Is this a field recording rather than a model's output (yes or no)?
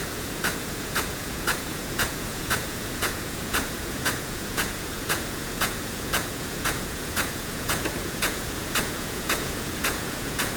no